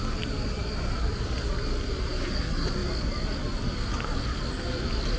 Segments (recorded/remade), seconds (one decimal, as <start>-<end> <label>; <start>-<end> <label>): 0.0-5.2 recorded